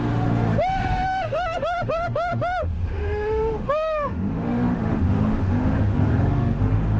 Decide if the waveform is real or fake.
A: fake